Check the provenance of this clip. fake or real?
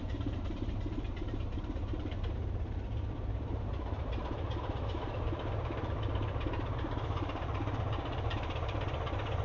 fake